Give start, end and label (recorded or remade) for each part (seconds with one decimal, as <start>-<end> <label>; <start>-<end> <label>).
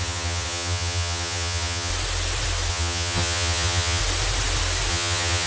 0.0-1.9 remade; 1.9-2.7 recorded; 2.7-4.0 remade; 4.0-4.9 recorded; 4.9-5.5 remade